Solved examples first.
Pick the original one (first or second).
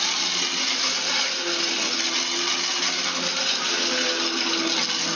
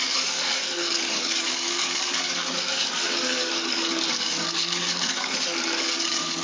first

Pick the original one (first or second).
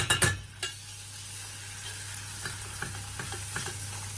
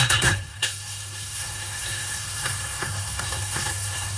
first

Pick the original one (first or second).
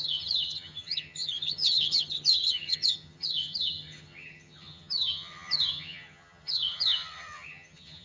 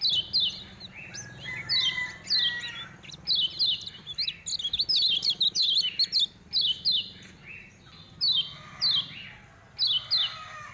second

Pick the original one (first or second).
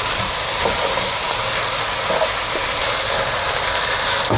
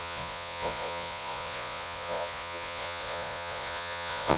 first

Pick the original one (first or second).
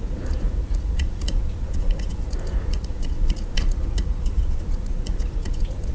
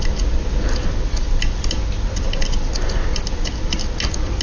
second